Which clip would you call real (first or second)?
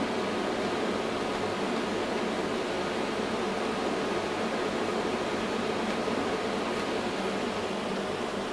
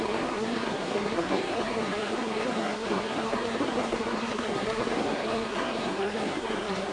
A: first